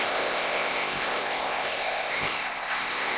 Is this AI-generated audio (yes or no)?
yes